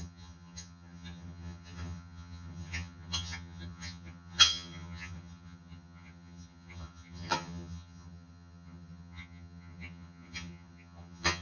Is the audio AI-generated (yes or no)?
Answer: yes